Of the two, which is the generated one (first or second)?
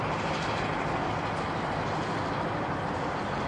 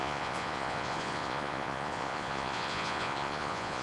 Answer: second